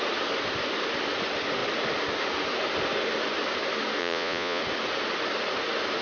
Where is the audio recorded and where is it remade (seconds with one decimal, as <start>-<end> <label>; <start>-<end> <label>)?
0.0-4.0 recorded; 4.0-4.6 remade; 4.6-6.0 recorded